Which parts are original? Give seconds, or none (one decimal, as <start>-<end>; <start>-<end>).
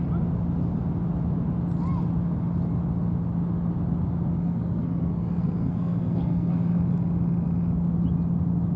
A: 0.0-4.3; 6.8-8.8